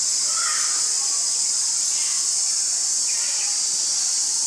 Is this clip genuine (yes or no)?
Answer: yes